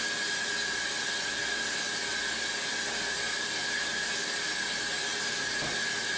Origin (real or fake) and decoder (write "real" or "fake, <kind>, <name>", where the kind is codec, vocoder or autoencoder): real